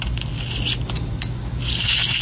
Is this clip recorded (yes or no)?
yes